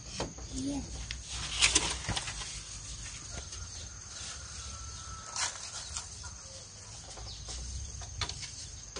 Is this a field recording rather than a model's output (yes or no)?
yes